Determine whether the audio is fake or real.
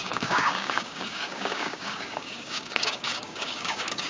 fake